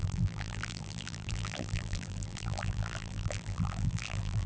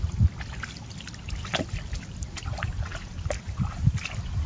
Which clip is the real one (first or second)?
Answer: second